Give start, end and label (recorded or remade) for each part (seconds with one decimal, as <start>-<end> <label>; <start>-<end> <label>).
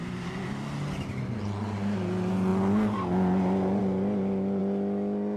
0.0-5.4 recorded